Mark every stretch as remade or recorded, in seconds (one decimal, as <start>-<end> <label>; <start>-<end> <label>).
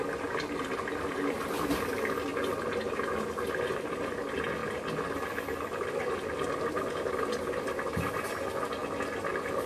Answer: 0.0-9.7 recorded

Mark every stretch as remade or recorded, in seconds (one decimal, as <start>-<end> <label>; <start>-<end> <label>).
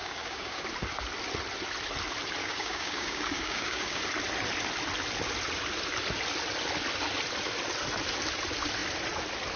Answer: 0.0-0.6 remade; 0.6-2.4 recorded; 2.4-4.0 remade; 4.0-9.6 recorded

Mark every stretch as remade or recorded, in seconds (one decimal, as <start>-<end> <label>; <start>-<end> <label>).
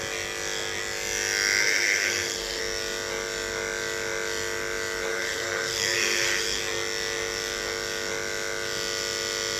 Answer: 0.0-1.6 recorded; 1.6-2.6 remade; 2.6-5.1 recorded; 5.1-6.6 remade; 6.6-9.6 recorded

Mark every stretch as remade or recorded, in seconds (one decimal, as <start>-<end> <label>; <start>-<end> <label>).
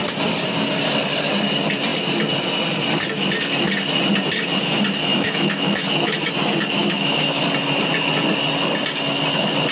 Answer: 0.0-5.1 recorded; 5.1-6.3 remade; 6.3-6.8 recorded; 6.8-7.4 remade; 7.4-9.7 recorded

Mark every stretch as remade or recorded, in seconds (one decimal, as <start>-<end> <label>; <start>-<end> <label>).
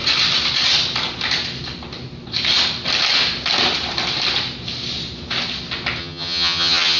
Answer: 0.0-6.0 recorded; 6.0-7.0 remade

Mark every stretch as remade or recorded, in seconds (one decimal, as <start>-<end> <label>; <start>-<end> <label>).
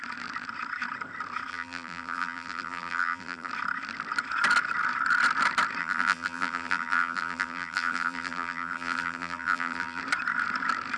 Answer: 0.0-1.5 recorded; 1.5-3.5 remade; 3.5-5.8 recorded; 5.8-10.0 remade; 10.0-11.0 recorded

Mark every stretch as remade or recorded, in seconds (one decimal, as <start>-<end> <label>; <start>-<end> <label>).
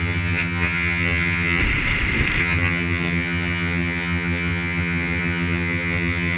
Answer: 0.0-1.6 remade; 1.6-2.4 recorded; 2.4-6.4 remade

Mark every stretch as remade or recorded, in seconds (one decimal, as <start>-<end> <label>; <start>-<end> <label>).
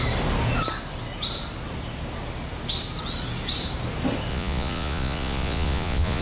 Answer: 0.0-4.3 recorded; 4.3-6.2 remade